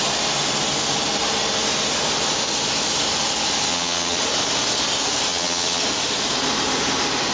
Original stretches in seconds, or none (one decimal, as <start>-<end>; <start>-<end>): 0.0-3.7; 4.2-5.3; 5.8-7.3

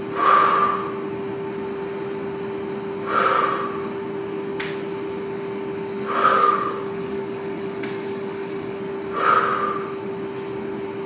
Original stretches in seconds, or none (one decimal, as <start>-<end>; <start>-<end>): 0.0-6.2; 8.9-11.1